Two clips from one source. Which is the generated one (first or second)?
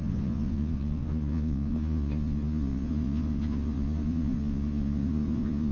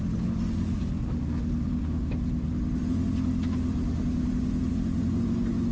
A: first